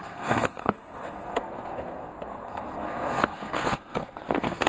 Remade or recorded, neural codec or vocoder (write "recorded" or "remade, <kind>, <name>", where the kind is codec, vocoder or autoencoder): remade, codec, SNAC